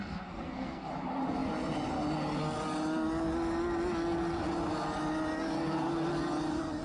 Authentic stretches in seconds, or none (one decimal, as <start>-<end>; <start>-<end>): 0.9-6.8